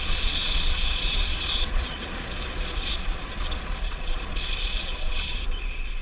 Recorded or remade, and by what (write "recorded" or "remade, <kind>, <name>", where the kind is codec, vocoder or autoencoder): remade, vocoder, Vocos